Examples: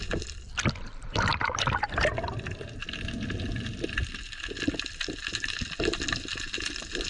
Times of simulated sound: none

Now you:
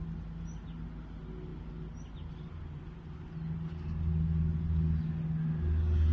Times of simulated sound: none

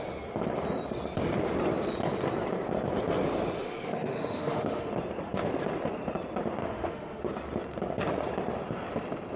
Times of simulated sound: 3.6-4.9 (autoencoder, DAC-VAE); 6.6-7.2

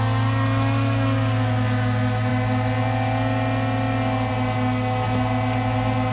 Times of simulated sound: none

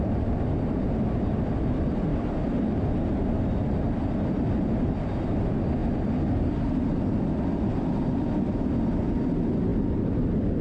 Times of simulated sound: none

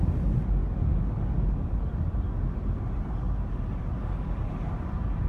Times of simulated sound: none

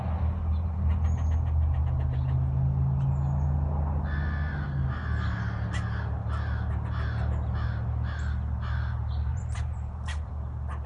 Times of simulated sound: 9.3-10.3 (vocoder, BigVGAN v2)

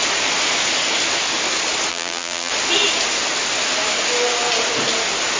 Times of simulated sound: 1.9-2.5 (vocoder, BigVGAN v2)